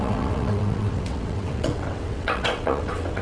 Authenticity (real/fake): fake